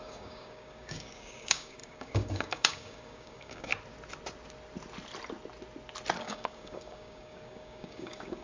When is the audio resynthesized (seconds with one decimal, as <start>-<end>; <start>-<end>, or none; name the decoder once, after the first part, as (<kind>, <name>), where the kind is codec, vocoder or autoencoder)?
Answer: 0.0-3.7 (codec, DAC); 6.2-8.4